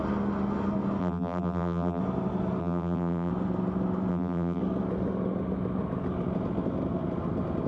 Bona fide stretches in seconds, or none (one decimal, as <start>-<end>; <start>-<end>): 0.0-1.0; 2.0-2.6; 3.3-4.1; 4.6-7.7